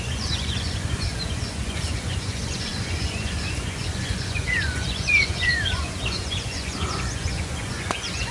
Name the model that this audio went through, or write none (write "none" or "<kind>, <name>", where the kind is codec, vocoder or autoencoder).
vocoder, Vocos